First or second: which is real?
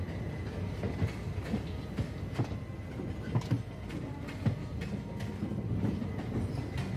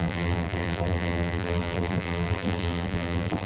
first